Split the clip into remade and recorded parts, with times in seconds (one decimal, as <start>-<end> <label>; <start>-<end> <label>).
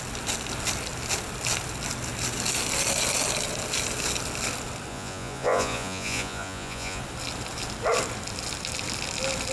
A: 0.0-4.9 recorded; 4.9-7.0 remade; 7.0-9.5 recorded